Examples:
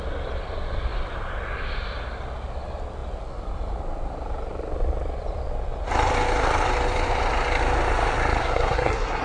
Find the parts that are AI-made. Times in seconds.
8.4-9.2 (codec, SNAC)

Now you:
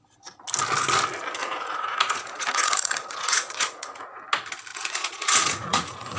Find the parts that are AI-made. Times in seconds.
1.4-4.2 (vocoder, Vocos); 4.7-6.2

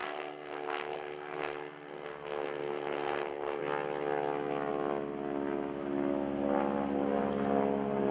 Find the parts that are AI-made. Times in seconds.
0.0-3.6 (codec, SNAC)

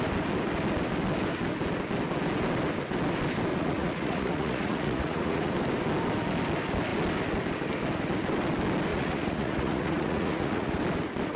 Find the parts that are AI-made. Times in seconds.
3.5-5.5 (vocoder, Vocos); 8.9-10.8